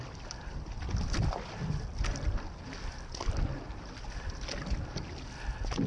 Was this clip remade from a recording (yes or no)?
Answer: no